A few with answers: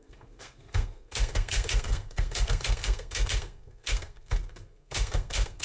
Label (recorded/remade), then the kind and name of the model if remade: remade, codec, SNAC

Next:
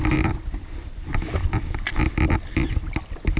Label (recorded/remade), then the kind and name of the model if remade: recorded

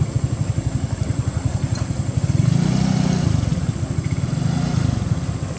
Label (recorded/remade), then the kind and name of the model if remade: recorded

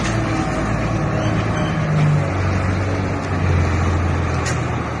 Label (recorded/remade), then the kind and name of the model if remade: recorded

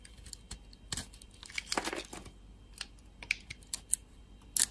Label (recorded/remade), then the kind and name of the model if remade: recorded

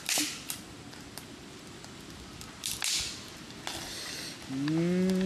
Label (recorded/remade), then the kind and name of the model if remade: recorded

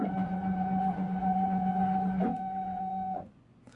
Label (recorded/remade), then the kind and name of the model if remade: remade, vocoder, Vocos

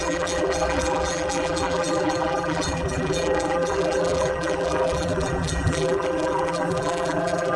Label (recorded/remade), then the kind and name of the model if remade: remade, vocoder, BigVGAN v2